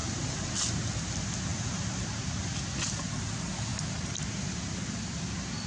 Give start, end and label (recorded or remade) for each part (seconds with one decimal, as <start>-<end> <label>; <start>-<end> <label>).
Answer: 0.0-1.5 recorded; 1.5-2.2 remade; 2.2-5.7 recorded

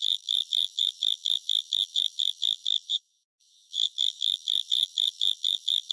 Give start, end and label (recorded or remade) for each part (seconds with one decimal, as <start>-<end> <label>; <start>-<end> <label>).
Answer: 0.0-5.9 remade

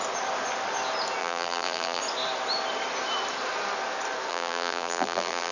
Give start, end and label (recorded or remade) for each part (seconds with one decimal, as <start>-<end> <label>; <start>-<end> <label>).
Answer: 0.0-1.2 recorded; 1.2-2.0 remade; 2.0-4.3 recorded; 4.3-5.5 remade